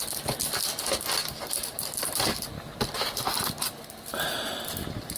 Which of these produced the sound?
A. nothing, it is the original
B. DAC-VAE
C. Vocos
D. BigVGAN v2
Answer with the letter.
A